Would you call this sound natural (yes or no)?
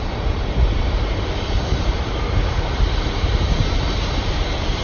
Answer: no